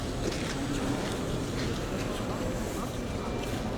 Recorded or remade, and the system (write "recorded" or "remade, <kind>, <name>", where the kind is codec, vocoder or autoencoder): recorded